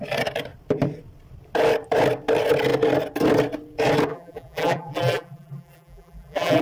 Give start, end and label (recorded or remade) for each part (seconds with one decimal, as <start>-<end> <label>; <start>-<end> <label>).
0.0-4.1 recorded; 4.1-6.6 remade